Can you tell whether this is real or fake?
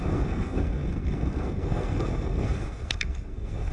fake